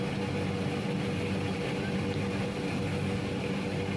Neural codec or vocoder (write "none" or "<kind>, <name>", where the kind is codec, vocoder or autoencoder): none